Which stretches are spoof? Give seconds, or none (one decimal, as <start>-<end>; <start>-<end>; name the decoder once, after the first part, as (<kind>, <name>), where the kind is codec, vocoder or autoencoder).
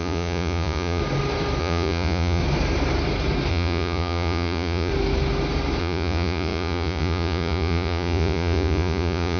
0.0-1.0 (vocoder, Vocos); 1.6-2.4; 3.5-4.9; 5.8-9.4